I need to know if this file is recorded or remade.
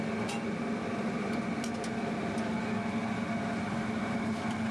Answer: recorded